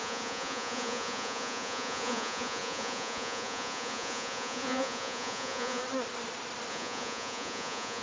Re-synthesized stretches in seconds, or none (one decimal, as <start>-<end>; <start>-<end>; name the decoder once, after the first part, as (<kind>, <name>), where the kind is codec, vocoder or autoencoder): 0.0-5.8 (vocoder, Vocos); 6.7-8.0